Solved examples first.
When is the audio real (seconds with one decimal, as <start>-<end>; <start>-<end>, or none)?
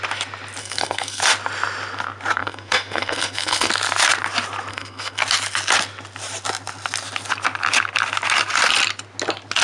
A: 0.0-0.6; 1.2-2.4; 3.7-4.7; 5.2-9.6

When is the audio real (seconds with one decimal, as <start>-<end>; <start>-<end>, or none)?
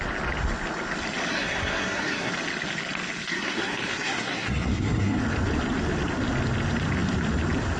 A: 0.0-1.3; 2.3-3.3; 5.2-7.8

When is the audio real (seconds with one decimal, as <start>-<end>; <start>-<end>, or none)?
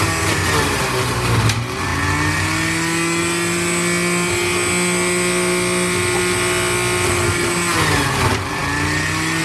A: 0.0-9.4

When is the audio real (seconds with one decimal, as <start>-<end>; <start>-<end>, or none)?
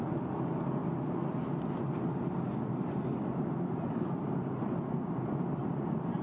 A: 0.0-6.2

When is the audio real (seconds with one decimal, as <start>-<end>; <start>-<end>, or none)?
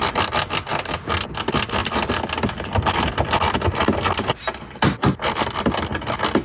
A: 0.0-6.4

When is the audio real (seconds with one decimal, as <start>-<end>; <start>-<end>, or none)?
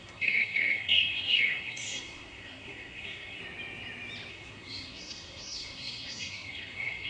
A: 3.4-4.3